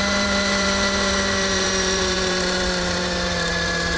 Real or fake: fake